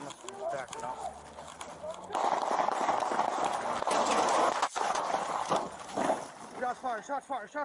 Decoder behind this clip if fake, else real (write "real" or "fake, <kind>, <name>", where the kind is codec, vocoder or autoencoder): real